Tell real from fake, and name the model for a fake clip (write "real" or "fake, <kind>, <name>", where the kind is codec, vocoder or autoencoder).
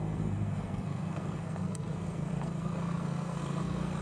fake, codec, SNAC